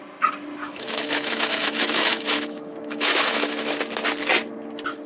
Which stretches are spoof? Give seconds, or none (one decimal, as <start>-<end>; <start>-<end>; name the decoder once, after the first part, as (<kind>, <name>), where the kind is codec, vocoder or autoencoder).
0.6-3.7 (autoencoder, DAC-VAE)